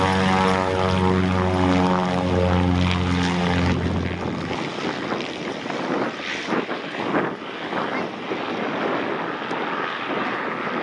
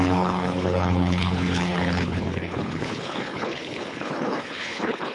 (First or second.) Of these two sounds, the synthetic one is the second